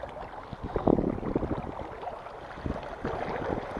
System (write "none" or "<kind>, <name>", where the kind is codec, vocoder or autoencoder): none